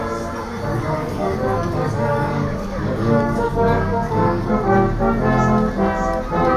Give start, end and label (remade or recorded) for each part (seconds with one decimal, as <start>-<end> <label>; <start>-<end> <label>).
0.0-0.7 recorded; 0.7-4.5 remade; 4.5-6.6 recorded